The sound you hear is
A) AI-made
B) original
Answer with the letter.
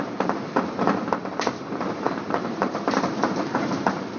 A